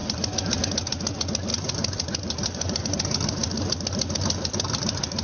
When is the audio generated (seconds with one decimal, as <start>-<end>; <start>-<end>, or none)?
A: 0.0-0.6; 1.5-2.8